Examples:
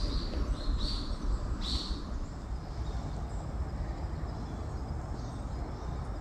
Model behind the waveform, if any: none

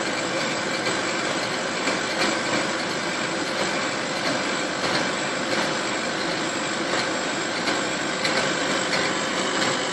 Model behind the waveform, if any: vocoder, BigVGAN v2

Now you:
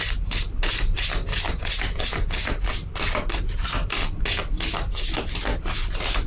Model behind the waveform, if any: none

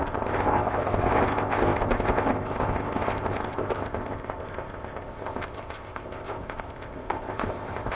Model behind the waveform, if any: codec, ZipCodec